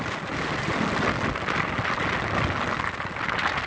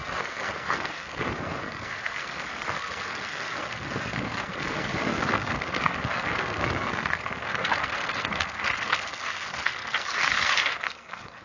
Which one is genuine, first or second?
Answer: first